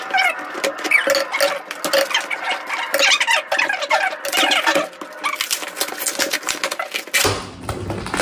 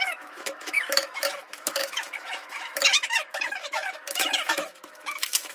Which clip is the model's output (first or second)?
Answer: second